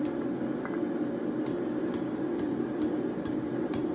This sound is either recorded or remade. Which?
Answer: recorded